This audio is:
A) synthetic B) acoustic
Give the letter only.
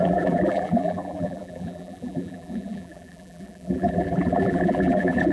A